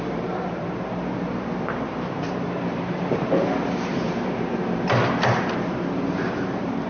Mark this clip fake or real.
fake